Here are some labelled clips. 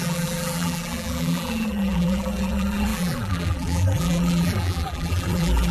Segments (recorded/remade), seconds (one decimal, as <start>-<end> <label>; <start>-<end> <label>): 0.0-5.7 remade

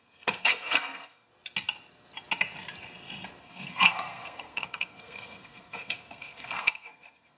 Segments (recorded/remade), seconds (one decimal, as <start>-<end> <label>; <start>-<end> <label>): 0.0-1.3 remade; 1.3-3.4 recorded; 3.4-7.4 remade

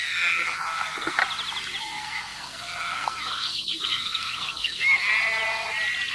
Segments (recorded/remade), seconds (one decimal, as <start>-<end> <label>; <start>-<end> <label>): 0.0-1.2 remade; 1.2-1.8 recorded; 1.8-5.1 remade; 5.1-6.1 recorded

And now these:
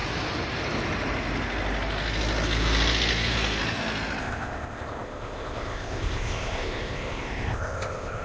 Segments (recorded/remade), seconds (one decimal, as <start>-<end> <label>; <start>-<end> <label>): 0.0-4.2 recorded; 4.2-8.2 remade

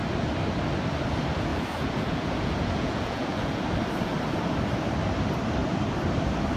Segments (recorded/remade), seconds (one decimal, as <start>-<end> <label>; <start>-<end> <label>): 0.0-1.5 recorded; 1.5-3.6 remade; 3.6-6.6 recorded

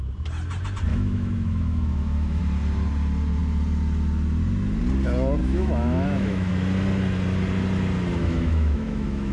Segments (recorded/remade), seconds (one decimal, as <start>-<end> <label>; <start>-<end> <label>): 0.0-0.9 recorded; 0.9-2.4 remade; 2.4-5.4 recorded; 5.4-6.5 remade; 6.5-8.2 recorded; 8.2-9.3 remade

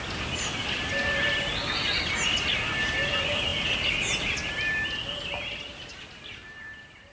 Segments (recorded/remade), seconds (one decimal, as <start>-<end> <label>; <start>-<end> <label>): 0.0-7.1 recorded

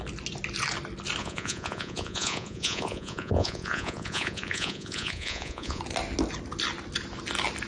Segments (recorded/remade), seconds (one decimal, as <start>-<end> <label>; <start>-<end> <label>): 0.0-1.2 recorded; 1.2-5.8 remade; 5.8-7.7 recorded